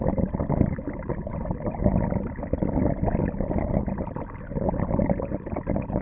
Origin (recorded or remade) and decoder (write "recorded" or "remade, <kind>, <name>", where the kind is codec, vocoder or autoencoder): recorded